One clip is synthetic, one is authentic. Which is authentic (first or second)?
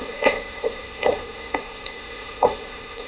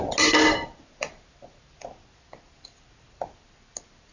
second